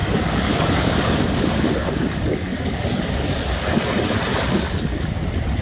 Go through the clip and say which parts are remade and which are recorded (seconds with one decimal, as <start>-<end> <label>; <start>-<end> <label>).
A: 0.0-3.4 remade; 3.4-4.3 recorded; 4.3-5.1 remade; 5.1-5.6 recorded